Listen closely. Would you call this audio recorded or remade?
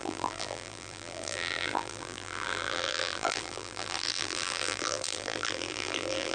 remade